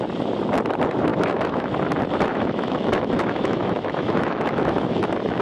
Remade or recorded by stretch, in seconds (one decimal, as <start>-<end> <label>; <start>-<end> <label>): 0.0-1.1 recorded; 1.1-1.7 remade; 1.7-2.3 recorded; 2.3-5.4 remade